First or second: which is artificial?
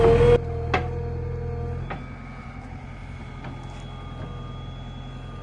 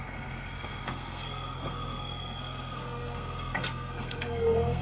second